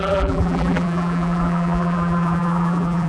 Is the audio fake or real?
fake